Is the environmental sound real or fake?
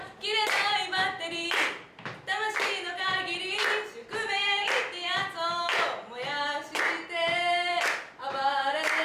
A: real